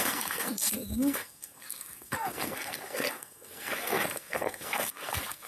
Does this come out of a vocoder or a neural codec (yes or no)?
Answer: yes